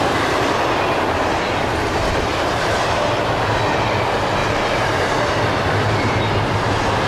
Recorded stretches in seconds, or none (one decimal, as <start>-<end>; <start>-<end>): 0.0-2.3; 3.5-4.4; 5.2-7.1